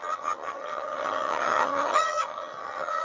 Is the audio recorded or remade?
remade